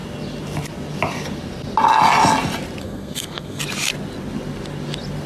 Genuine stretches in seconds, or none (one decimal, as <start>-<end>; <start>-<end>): 0.0-2.8; 3.6-5.3